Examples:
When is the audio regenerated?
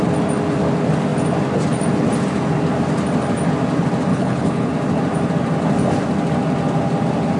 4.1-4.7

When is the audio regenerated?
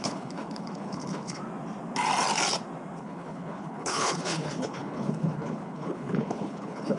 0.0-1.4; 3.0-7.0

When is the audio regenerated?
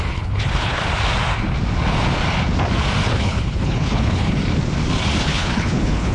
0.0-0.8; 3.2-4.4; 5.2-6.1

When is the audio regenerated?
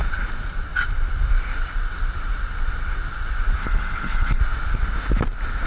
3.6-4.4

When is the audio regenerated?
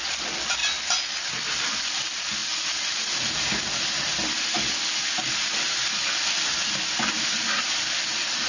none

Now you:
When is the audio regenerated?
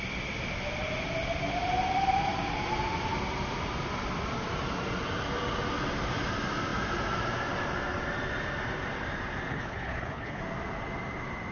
9.5-10.4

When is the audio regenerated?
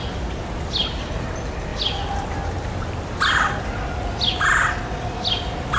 none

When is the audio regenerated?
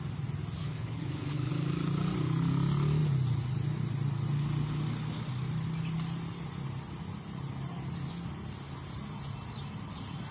0.6-1.5